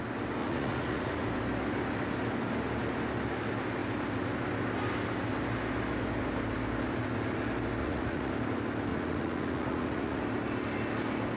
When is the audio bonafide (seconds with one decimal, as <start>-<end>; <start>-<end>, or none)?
0.0-0.4; 1.1-7.8; 8.3-8.9; 10.2-11.4